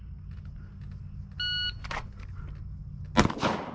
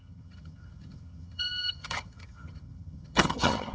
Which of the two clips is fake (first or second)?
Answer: second